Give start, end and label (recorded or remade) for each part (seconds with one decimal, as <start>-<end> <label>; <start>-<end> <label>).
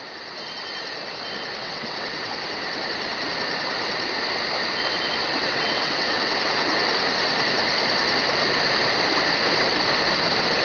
0.0-1.6 recorded; 1.6-2.3 remade; 2.3-5.4 recorded; 5.4-6.7 remade; 6.7-10.6 recorded